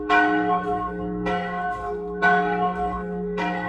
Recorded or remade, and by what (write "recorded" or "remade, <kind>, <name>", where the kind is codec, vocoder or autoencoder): remade, codec, SNAC